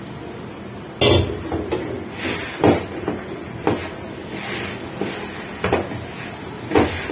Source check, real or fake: real